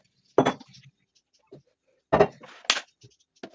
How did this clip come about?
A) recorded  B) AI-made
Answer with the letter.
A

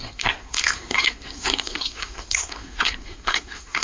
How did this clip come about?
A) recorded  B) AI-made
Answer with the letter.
B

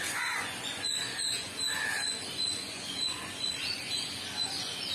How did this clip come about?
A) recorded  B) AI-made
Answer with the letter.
B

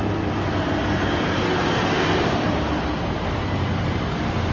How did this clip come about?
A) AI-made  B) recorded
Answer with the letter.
B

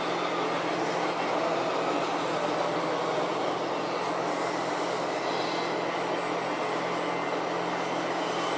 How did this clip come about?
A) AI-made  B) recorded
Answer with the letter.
B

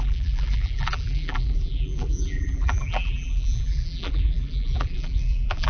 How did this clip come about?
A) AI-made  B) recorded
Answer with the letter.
A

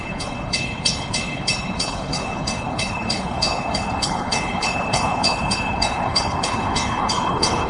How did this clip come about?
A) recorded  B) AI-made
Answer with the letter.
B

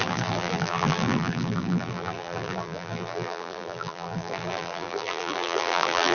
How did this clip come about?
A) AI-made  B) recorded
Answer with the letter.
A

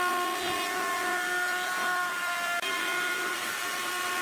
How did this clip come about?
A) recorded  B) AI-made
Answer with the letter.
A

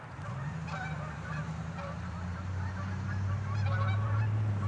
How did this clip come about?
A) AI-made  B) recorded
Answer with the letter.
A